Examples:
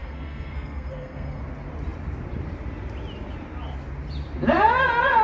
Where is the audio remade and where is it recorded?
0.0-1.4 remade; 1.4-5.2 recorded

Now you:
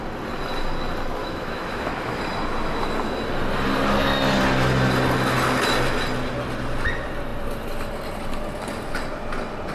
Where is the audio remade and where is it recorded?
0.0-1.2 recorded; 1.2-2.2 remade; 2.2-9.7 recorded

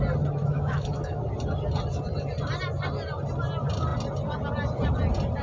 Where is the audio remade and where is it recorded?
0.0-0.4 recorded; 0.4-1.2 remade; 1.2-5.4 recorded

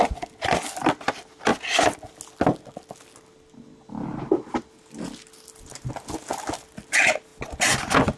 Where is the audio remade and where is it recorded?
0.0-8.2 recorded

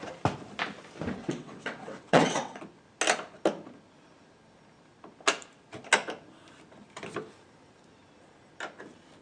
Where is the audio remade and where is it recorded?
0.0-1.2 recorded; 1.2-2.6 remade; 2.6-9.2 recorded